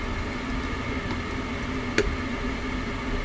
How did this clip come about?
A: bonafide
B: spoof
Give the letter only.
A